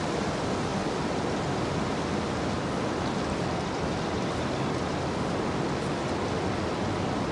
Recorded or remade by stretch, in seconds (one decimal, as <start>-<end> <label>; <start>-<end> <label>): 0.0-7.3 recorded